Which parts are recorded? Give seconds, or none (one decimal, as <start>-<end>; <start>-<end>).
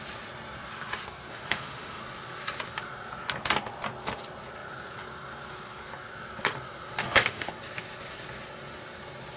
0.0-1.3; 2.0-7.0; 7.5-9.4